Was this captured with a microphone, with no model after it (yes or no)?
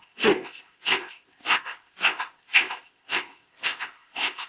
no